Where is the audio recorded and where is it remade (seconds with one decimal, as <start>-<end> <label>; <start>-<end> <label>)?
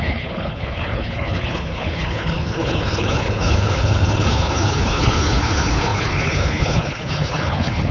0.0-7.9 remade